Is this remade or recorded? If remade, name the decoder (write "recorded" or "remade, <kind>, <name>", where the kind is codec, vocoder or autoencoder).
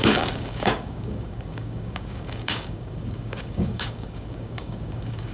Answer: remade, codec, DAC